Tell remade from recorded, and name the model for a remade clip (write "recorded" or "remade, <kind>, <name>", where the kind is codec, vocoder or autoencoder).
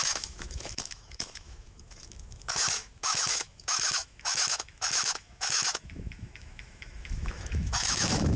remade, autoencoder, DAC-VAE